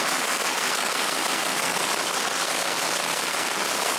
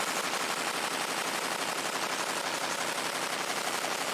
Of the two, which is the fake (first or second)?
first